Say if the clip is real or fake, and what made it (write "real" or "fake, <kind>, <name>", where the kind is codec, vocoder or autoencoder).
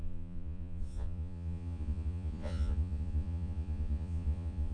fake, vocoder, Vocos